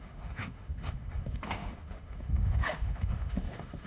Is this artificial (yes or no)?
yes